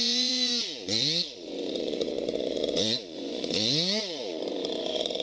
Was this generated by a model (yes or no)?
yes